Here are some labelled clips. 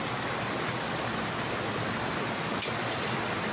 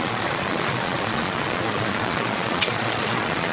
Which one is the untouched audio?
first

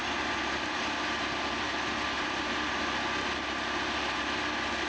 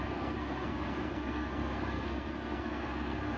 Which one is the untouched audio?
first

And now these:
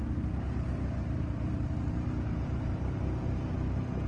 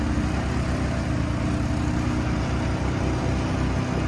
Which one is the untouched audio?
second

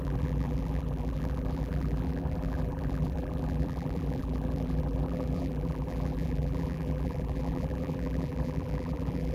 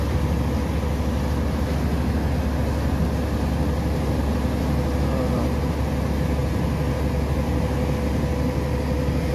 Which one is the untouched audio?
second